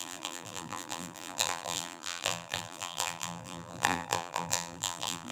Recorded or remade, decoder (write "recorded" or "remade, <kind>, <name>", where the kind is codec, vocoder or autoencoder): remade, vocoder, BigVGAN v2